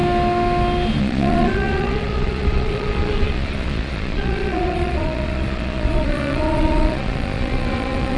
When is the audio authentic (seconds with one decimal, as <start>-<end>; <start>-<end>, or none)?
0.0-1.0